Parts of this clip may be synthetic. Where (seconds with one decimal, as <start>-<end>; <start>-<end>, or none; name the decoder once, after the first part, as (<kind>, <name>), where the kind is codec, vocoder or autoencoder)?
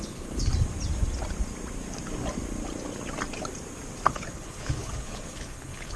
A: 0.0-0.5 (codec, HILCodec); 4.1-6.0